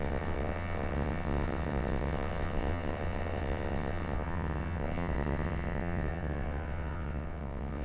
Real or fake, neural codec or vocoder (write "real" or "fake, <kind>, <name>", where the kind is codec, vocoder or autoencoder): fake, vocoder, WaveNeXt